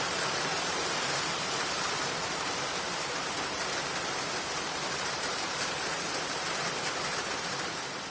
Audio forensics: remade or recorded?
remade